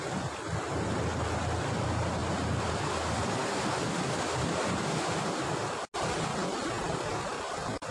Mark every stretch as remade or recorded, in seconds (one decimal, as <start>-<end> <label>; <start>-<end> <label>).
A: 0.0-3.4 recorded; 3.4-4.9 remade; 4.9-7.9 recorded